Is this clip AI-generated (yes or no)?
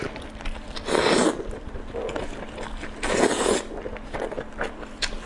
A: no